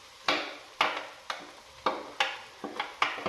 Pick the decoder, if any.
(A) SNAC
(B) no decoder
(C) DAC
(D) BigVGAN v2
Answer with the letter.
B